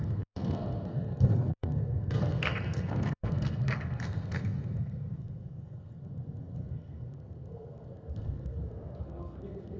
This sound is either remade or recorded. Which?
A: remade